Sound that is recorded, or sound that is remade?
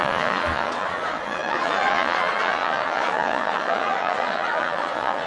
remade